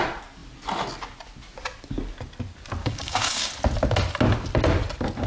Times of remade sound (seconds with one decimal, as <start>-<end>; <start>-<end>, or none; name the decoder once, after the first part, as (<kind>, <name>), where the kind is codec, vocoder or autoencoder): 2.8-3.5 (codec, DAC)